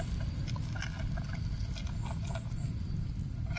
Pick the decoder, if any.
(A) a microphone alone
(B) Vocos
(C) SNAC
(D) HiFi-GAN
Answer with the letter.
A